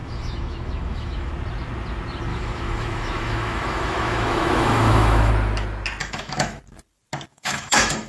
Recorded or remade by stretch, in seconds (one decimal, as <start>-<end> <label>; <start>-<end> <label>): 0.0-1.3 remade; 1.3-2.3 recorded; 2.3-5.3 remade; 5.3-6.0 recorded; 6.0-6.6 remade; 6.6-7.3 recorded; 7.3-8.1 remade